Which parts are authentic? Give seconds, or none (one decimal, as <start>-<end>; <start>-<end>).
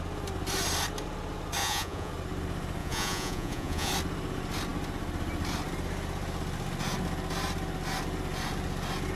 0.0-1.6; 2.1-2.8; 3.9-9.2